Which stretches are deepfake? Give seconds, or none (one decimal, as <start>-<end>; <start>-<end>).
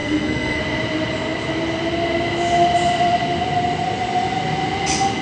0.0-0.6